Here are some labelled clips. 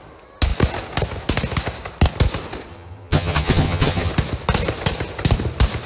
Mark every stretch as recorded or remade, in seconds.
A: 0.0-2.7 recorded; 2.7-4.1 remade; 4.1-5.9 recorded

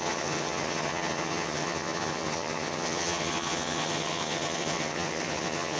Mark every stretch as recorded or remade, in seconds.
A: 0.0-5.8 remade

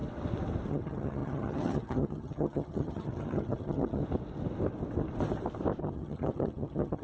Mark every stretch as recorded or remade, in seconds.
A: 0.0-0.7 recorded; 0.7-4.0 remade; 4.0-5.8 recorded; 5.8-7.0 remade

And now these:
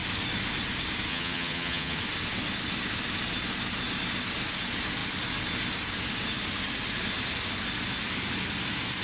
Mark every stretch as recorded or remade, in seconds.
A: 0.0-1.1 recorded; 1.1-2.0 remade; 2.0-9.0 recorded

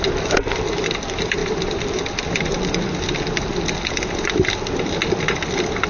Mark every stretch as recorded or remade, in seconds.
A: 0.0-5.9 recorded

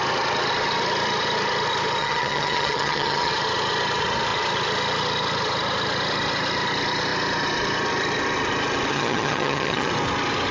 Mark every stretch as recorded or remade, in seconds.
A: 0.0-2.0 recorded; 2.0-3.3 remade; 3.3-8.9 recorded; 8.9-9.9 remade; 9.9-10.5 recorded

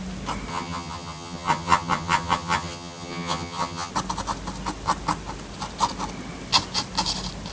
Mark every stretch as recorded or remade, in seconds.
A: 0.0-0.5 recorded; 0.5-3.9 remade; 3.9-7.5 recorded